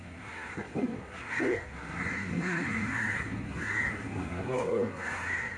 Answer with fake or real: fake